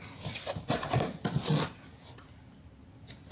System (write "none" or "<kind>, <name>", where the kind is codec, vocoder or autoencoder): none